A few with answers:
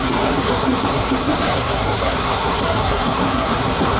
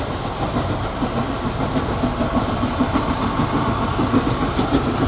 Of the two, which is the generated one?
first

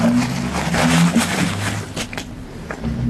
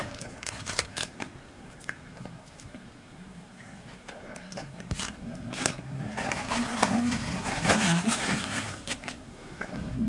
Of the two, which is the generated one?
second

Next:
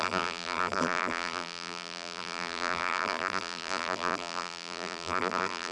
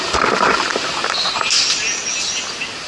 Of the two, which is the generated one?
first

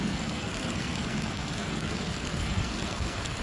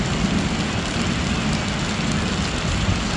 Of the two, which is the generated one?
first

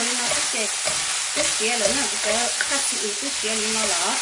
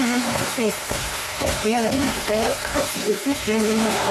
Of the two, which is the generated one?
second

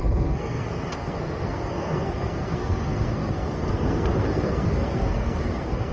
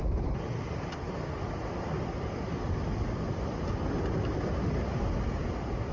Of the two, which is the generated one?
first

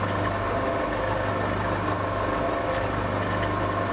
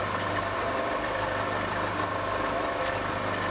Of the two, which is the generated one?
second